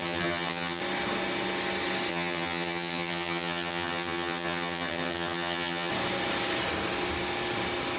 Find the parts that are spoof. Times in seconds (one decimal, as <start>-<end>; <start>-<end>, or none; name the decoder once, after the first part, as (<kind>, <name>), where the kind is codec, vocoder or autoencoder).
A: 0.0-0.8 (vocoder, HiFi-GAN); 2.1-5.9